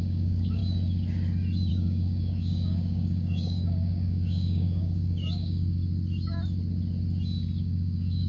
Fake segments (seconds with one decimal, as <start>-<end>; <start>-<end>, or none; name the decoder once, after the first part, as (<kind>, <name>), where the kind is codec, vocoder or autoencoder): 0.0-0.6 (codec, DAC); 1.7-5.8; 7.6-8.3